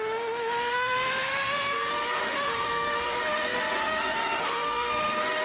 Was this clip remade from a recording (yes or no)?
yes